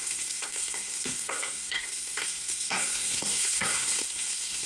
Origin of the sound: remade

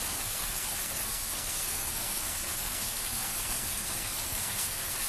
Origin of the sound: remade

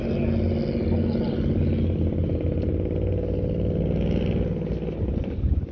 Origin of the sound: recorded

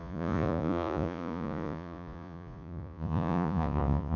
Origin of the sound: remade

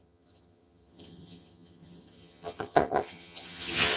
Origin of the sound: remade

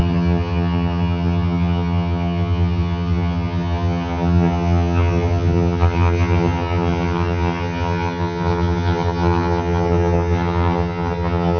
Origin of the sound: remade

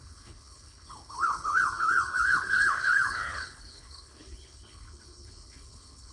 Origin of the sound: remade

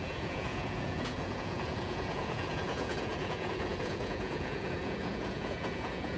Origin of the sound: remade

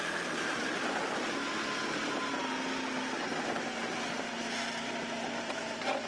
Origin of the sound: recorded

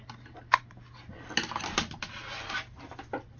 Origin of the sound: recorded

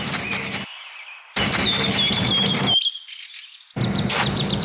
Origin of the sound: recorded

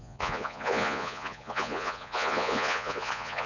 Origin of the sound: remade